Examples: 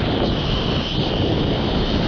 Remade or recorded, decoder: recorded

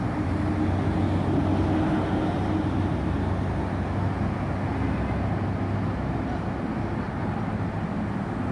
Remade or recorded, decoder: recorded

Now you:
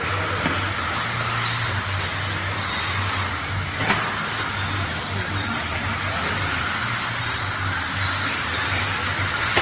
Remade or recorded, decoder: recorded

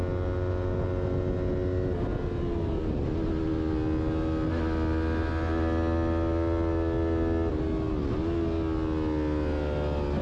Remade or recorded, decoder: recorded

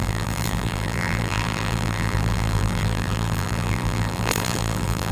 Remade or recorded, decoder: remade, vocoder, BigVGAN v2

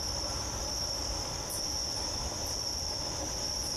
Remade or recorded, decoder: remade, vocoder, BigVGAN v2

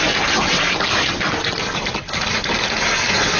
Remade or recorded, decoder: recorded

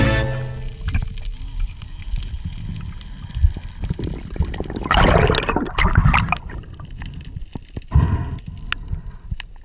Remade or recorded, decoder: recorded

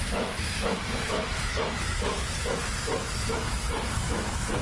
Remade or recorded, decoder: remade, autoencoder, DAC-VAE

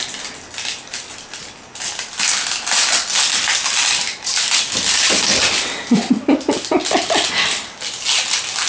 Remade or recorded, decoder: recorded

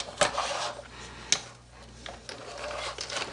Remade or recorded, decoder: recorded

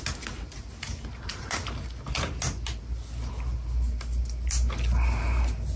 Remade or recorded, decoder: recorded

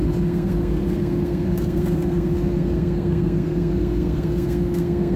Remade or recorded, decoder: remade, codec, SNAC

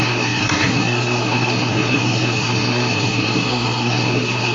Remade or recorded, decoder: remade, codec, SNAC